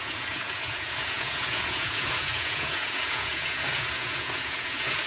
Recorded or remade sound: remade